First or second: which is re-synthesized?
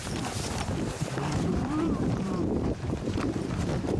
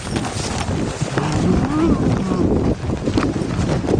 first